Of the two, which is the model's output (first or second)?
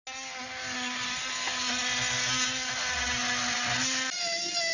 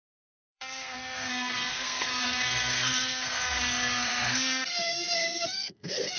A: second